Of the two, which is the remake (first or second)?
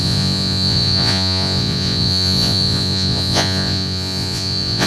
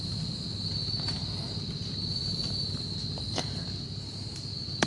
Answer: first